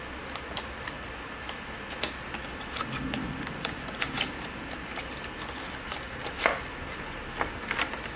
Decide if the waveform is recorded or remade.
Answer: recorded